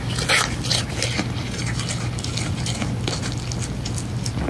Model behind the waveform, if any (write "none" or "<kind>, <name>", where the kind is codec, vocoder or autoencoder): none